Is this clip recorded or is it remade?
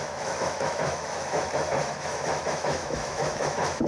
remade